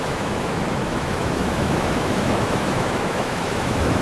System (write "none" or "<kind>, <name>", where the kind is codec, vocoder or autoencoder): autoencoder, DAC-VAE